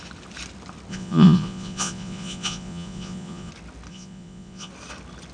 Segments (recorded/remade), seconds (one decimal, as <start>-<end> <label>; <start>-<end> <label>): 0.0-0.9 recorded; 0.9-3.5 remade; 3.5-3.9 recorded; 3.9-4.7 remade; 4.7-5.3 recorded